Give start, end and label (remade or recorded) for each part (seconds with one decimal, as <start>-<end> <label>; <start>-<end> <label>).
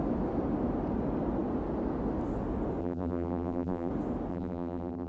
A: 0.0-2.8 recorded; 2.8-3.9 remade; 3.9-4.3 recorded; 4.3-5.1 remade